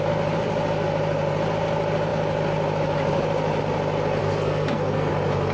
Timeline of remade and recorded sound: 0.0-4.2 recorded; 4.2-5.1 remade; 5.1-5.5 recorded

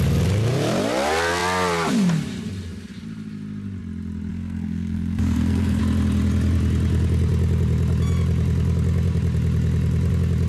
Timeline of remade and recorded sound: 0.0-4.3 recorded; 4.3-5.8 remade; 5.8-10.5 recorded

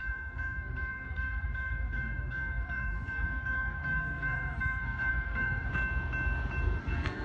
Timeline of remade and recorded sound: 0.0-5.7 remade; 5.7-6.8 recorded; 6.8-7.2 remade

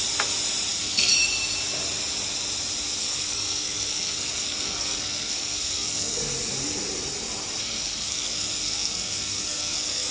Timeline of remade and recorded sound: 0.0-0.7 recorded; 0.7-1.1 remade; 1.1-3.0 recorded; 3.0-6.2 remade; 6.2-7.6 recorded; 7.6-10.1 remade

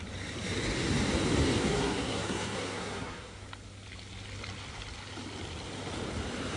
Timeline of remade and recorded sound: 0.0-1.6 recorded; 1.6-3.5 remade; 3.5-6.6 recorded

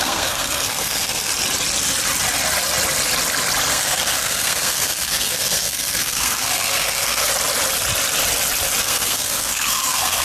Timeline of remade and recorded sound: 0.0-1.3 remade; 1.3-3.7 recorded; 3.7-7.3 remade; 7.3-8.8 recorded; 8.8-10.2 remade

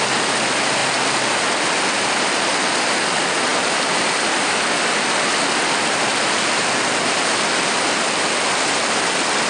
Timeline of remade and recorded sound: 0.0-9.5 recorded